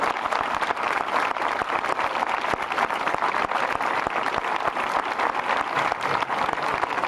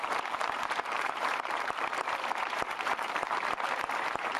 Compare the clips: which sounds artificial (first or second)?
second